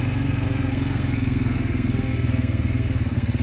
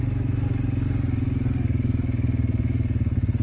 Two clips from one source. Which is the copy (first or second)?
first